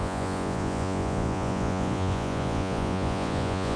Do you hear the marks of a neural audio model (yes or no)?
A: yes